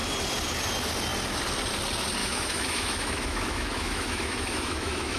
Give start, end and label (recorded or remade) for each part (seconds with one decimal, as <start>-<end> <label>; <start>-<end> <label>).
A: 0.0-2.2 recorded; 2.2-5.2 remade